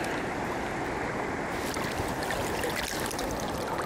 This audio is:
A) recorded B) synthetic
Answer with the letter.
A